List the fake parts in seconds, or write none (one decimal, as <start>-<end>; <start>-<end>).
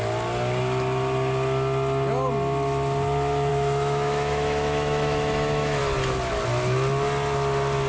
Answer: 3.5-5.8